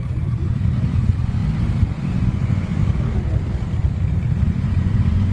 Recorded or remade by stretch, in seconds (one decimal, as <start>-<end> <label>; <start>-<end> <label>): 0.0-1.4 remade; 1.4-2.2 recorded; 2.2-2.7 remade; 2.7-4.4 recorded; 4.4-5.3 remade

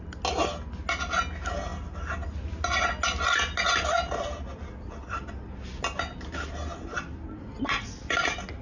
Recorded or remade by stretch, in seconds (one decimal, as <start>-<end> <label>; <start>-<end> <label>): 0.0-8.6 recorded

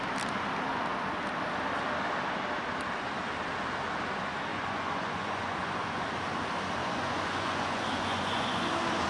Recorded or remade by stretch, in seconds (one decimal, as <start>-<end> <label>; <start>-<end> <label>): 0.0-4.5 recorded; 4.5-6.0 remade; 6.0-6.8 recorded; 6.8-8.7 remade; 8.7-9.1 recorded

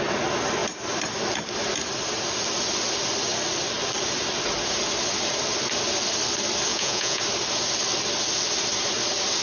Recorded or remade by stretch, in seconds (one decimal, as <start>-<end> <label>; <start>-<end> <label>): 0.0-6.7 recorded; 6.7-7.2 remade; 7.2-9.4 recorded

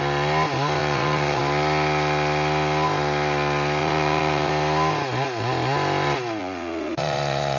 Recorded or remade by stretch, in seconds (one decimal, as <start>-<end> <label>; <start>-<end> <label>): 0.0-0.8 recorded; 0.8-1.4 remade; 1.4-3.8 recorded; 3.8-4.5 remade; 4.5-6.4 recorded; 6.4-7.6 remade